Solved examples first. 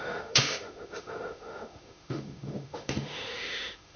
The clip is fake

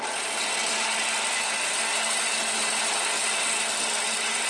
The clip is real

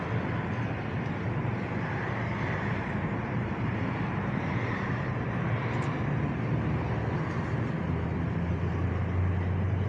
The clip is real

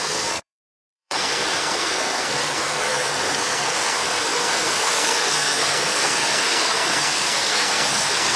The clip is fake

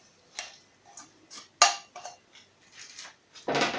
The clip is real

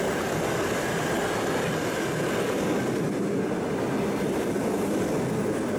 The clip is real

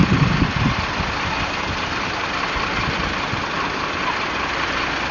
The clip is real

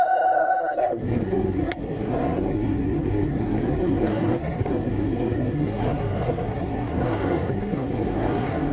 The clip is fake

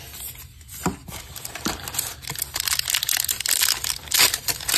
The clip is real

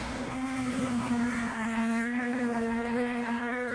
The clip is fake